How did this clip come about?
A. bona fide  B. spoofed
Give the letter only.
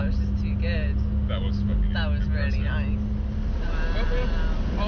A